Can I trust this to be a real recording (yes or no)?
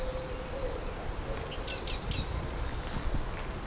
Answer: yes